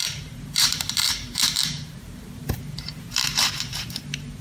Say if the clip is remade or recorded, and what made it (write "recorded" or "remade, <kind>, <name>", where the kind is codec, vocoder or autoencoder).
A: remade, vocoder, BigVGAN v2